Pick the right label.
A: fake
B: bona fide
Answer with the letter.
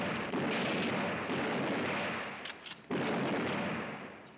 B